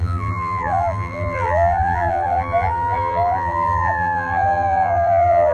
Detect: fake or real fake